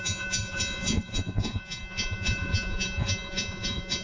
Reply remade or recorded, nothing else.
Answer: remade